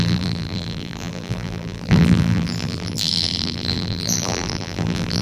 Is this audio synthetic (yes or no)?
yes